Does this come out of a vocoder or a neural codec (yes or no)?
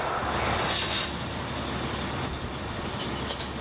no